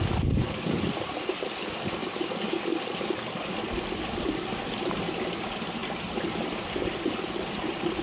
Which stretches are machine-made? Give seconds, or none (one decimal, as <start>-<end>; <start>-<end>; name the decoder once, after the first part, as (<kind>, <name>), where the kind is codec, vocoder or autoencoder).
none